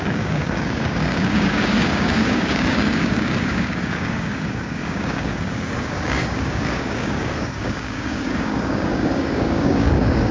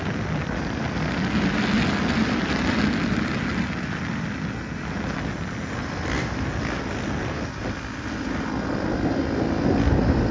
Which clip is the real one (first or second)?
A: second